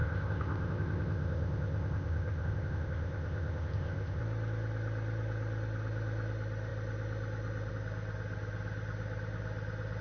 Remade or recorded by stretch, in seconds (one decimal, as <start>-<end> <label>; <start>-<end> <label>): 0.0-4.2 remade; 4.2-10.0 recorded